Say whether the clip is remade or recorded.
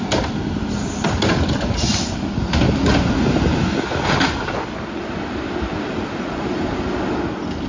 recorded